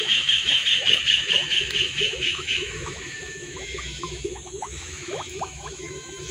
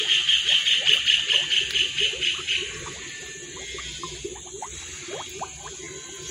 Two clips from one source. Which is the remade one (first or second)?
first